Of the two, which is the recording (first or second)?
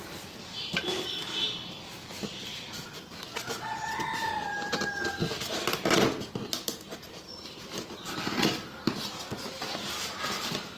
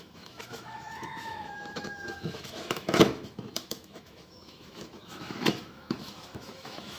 first